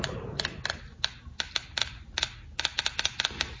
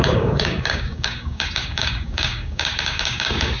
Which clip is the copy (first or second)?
second